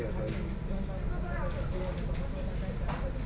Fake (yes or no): no